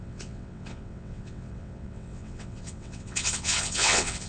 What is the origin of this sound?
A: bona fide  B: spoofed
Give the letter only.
B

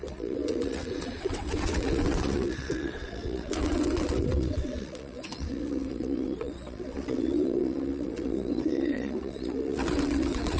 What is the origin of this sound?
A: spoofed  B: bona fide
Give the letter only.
A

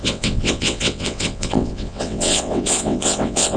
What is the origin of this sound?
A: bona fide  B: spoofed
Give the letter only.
B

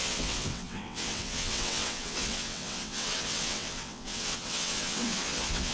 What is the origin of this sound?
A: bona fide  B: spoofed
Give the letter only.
B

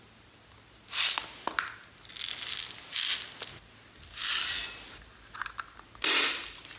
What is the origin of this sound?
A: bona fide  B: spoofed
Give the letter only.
A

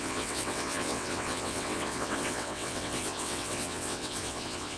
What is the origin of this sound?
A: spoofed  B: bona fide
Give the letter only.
A